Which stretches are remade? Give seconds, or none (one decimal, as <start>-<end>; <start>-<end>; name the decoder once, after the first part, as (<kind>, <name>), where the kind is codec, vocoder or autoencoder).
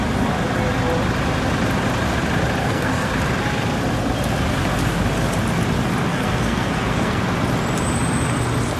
2.6-3.1 (codec, SNAC); 6.1-7.2